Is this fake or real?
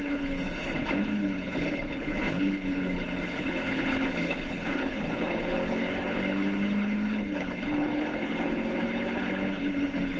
fake